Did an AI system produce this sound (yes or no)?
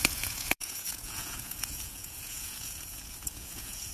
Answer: yes